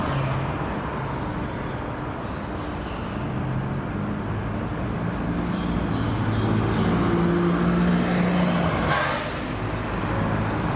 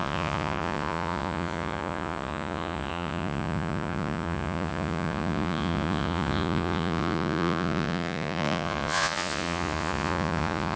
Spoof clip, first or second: second